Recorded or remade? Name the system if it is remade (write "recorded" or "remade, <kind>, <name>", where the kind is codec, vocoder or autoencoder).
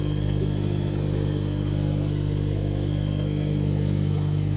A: remade, codec, SNAC